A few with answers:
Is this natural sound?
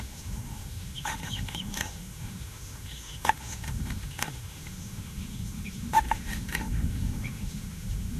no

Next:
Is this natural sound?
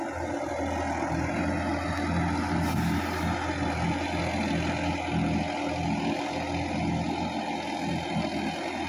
yes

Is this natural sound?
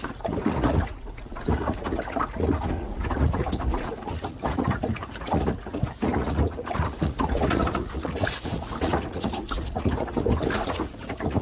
no